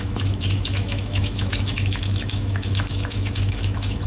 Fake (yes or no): yes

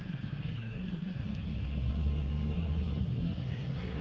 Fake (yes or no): yes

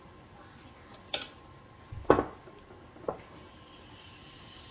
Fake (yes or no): no